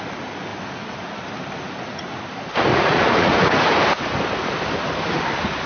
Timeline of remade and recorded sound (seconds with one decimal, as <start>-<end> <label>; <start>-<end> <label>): 0.0-2.7 recorded; 2.7-3.8 remade; 3.8-5.7 recorded